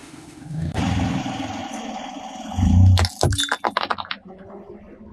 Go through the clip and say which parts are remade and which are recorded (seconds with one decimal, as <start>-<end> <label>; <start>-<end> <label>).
0.0-0.8 remade; 0.8-5.1 recorded